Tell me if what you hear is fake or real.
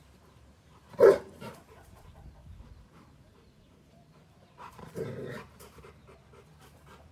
fake